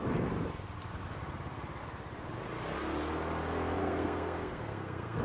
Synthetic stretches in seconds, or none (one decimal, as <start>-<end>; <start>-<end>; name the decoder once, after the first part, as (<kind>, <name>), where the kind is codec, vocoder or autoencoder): 3.8-5.2 (codec, SNAC)